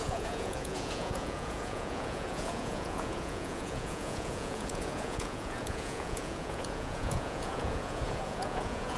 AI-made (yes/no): yes